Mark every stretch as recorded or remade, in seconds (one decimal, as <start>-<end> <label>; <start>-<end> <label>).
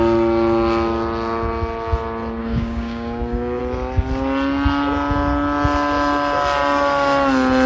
0.0-2.4 recorded; 2.4-3.6 remade; 3.6-7.7 recorded